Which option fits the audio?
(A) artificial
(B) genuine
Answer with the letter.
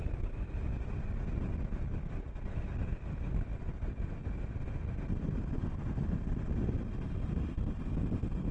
B